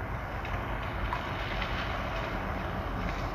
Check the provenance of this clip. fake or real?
real